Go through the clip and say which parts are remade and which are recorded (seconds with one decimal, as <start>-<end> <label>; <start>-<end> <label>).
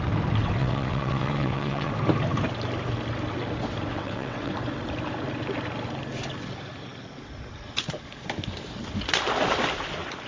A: 0.0-0.6 recorded; 0.6-1.9 remade; 1.9-3.9 recorded; 3.9-4.5 remade; 4.5-10.3 recorded